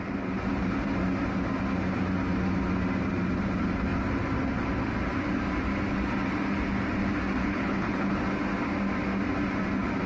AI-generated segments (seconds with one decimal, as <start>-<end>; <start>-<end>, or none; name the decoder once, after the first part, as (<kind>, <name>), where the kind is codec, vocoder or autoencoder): 7.4-8.1 (codec, HILCodec)